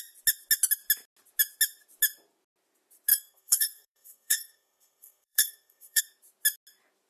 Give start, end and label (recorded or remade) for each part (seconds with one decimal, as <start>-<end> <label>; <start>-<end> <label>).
0.0-3.1 recorded; 3.1-6.0 remade; 6.0-7.1 recorded